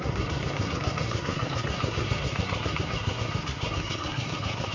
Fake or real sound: fake